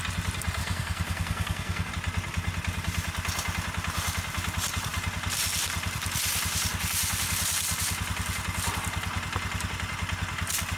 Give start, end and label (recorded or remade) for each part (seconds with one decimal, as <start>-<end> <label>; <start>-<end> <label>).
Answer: 0.0-0.6 recorded; 0.6-1.9 remade; 1.9-10.8 recorded